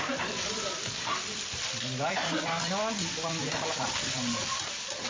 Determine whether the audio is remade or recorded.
recorded